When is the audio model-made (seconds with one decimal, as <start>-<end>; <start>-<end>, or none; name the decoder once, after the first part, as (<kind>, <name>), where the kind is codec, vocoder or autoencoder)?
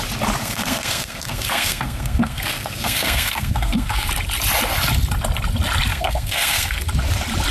0.4-4.1 (codec, SNAC); 5.9-6.8